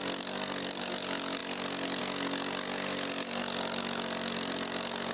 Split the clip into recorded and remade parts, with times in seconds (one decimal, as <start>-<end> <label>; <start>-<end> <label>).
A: 0.0-5.1 recorded